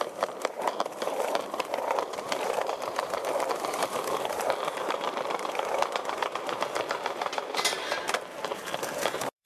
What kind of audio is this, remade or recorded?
remade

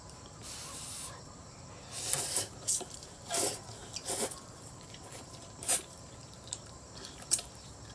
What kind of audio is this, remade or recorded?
remade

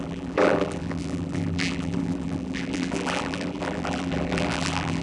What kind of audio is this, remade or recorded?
remade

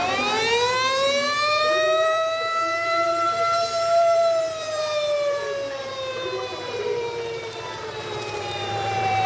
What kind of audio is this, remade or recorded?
remade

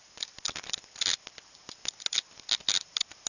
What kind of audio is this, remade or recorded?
recorded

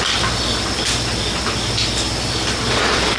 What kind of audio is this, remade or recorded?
recorded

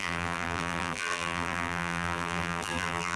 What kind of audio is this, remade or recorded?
remade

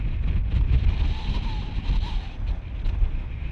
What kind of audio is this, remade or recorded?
recorded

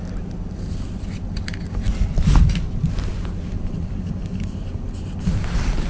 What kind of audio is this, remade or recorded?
recorded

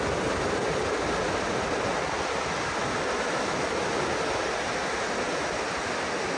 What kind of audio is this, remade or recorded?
recorded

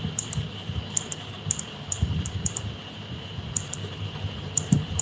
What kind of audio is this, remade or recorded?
remade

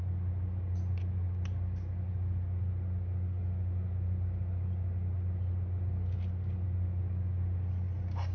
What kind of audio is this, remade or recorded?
recorded